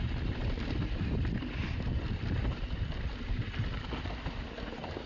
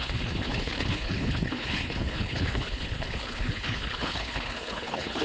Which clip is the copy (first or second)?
second